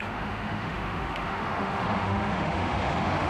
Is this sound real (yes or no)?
no